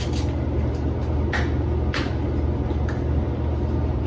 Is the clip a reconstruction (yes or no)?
no